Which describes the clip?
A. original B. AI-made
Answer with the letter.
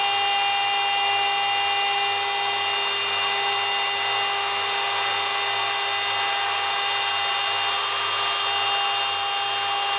A